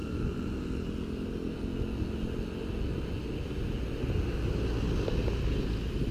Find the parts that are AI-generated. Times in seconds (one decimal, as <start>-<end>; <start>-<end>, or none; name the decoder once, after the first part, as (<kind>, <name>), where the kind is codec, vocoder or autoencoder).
0.0-0.9 (vocoder, BigVGAN v2)